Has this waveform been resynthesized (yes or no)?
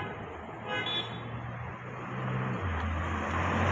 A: no